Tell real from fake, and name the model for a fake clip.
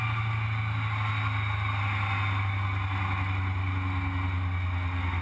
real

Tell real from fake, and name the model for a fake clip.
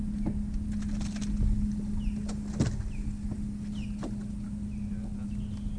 real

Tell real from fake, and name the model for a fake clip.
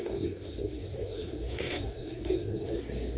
fake, codec, SNAC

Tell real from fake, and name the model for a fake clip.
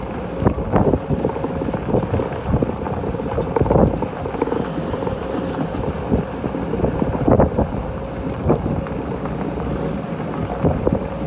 real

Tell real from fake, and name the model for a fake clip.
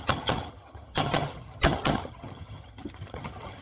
fake, vocoder, HiFi-GAN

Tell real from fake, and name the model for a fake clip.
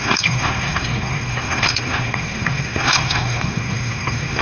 fake, codec, SNAC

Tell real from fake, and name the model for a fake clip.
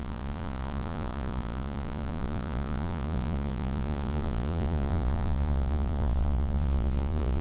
fake, vocoder, Vocos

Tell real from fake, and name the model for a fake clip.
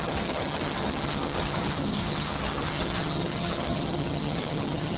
fake, vocoder, HiFi-GAN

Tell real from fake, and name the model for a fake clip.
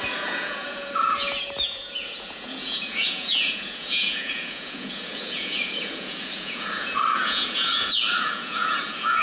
fake, vocoder, Vocos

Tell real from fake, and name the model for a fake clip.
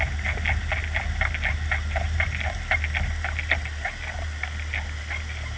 real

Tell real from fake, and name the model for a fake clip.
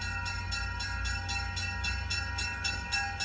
real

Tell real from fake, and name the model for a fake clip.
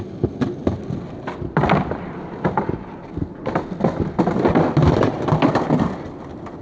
real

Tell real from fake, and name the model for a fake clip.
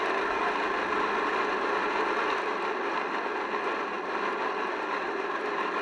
real